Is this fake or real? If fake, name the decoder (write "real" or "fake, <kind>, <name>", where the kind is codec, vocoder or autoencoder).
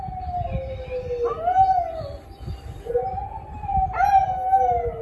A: real